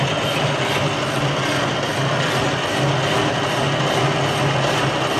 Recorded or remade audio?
recorded